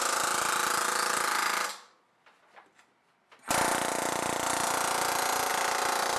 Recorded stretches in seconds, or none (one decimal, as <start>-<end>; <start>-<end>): 0.0-6.2

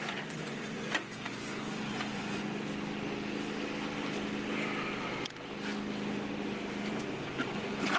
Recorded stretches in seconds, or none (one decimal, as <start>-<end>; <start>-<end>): 2.7-6.9

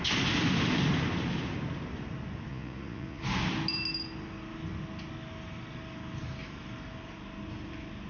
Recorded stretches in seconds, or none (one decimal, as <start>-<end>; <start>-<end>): 0.0-2.5; 3.2-8.1

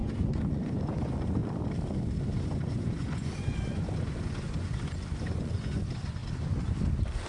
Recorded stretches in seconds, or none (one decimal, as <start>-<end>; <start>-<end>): 1.4-2.4; 6.2-7.3

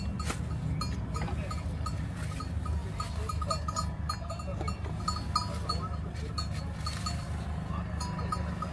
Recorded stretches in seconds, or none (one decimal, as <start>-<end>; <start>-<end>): 0.0-8.7

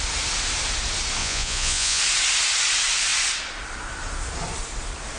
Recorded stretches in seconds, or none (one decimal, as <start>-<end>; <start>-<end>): 0.0-1.2; 2.0-5.2

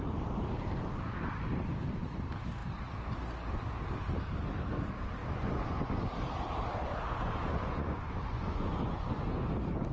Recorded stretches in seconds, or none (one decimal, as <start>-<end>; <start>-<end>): 0.0-5.2; 6.0-7.1; 9.2-9.9

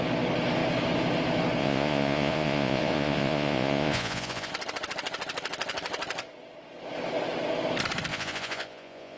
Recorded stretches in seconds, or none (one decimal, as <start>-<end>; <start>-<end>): 0.0-1.6; 4.5-8.1